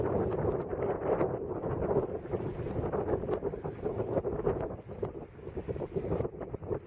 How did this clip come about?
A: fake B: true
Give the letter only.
A